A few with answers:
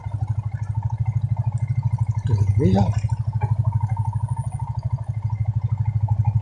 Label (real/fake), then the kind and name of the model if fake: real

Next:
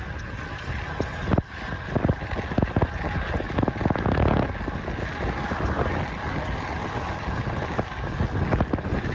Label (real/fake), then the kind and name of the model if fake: real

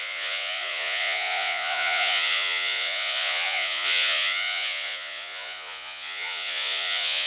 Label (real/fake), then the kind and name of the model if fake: fake, vocoder, Vocos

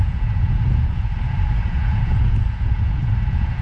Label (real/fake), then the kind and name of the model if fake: fake, vocoder, Vocos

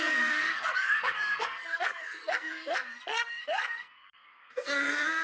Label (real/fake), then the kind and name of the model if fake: fake, codec, SNAC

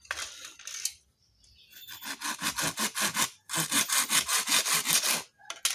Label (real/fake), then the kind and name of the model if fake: real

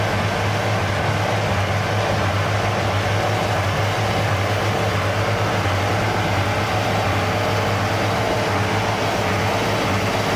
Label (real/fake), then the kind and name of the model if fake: real